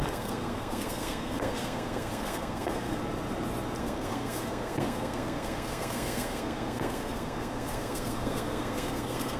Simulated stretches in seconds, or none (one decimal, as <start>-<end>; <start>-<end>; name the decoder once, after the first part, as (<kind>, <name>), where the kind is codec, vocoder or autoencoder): 0.0-3.0 (codec, SNAC); 3.8-9.4